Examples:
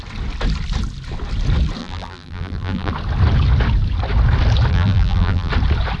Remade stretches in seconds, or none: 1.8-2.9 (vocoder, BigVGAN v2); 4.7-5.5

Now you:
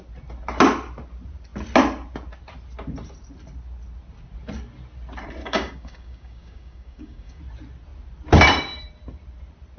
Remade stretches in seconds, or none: 5.4-7.4 (codec, DAC)

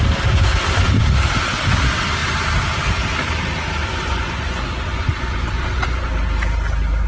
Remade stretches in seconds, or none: 3.8-6.1 (vocoder, Vocos)